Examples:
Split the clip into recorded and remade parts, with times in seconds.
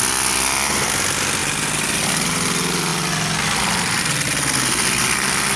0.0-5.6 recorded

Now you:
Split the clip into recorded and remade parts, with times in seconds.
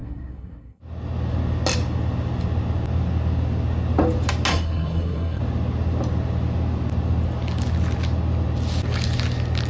0.0-0.8 remade; 0.8-4.5 recorded; 4.5-5.4 remade; 5.4-9.7 recorded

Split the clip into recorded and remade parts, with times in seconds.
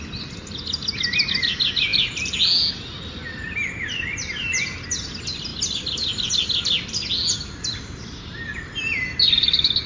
0.0-9.9 recorded